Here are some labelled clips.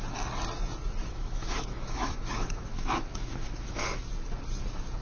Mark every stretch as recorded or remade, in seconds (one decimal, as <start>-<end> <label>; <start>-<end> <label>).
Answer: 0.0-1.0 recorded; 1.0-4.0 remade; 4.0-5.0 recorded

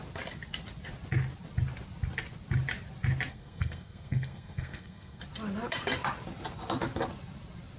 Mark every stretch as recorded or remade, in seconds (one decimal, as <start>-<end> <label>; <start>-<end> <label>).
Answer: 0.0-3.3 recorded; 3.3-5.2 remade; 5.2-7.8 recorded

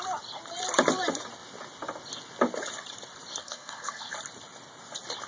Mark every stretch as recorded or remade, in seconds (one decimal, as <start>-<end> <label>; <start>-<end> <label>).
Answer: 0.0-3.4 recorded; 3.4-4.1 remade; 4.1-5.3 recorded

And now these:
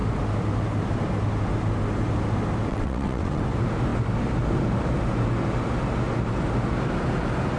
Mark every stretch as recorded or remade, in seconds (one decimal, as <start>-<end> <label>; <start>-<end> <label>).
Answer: 0.0-2.7 recorded; 2.7-3.4 remade; 3.4-7.6 recorded